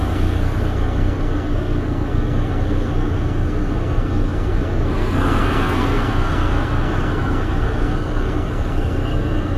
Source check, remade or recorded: remade